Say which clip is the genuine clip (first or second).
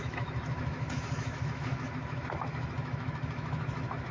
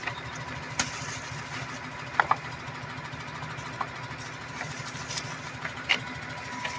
second